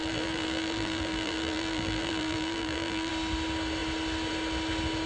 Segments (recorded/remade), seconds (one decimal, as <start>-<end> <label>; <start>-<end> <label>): 0.0-3.1 remade; 3.1-5.1 recorded